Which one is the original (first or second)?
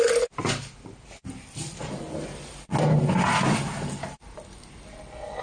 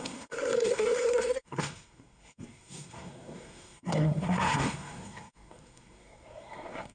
first